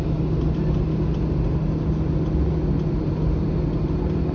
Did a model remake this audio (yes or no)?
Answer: no